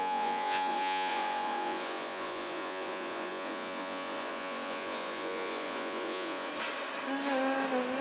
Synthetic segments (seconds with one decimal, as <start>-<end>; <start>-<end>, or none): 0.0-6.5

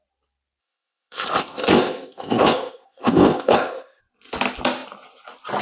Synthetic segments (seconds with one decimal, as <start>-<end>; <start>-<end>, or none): 0.6-4.0

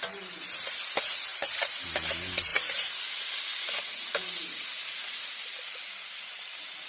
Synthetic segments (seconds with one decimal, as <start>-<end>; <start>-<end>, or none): 2.5-3.0

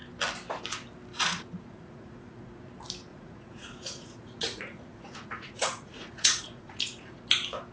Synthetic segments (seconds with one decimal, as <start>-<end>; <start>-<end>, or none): 1.1-2.6; 3.1-7.2

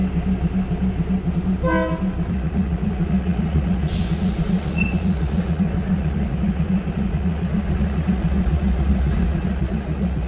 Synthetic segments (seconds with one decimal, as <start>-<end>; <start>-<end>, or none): 2.3-10.3

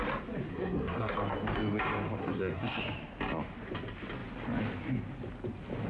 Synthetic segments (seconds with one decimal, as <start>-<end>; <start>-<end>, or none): 0.5-1.1; 2.2-2.8